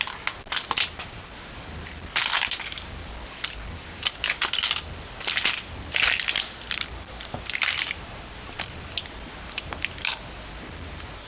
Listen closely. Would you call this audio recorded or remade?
recorded